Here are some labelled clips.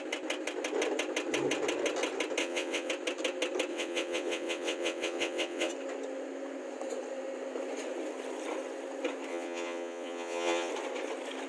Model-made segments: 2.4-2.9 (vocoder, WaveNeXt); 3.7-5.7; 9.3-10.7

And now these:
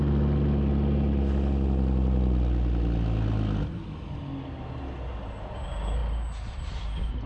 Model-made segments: none

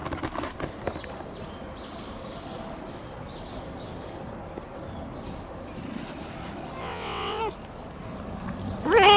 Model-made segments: 6.8-7.4 (vocoder, WaveNeXt)

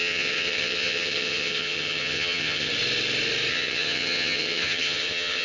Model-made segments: 0.0-2.7 (vocoder, HiFi-GAN); 3.5-5.4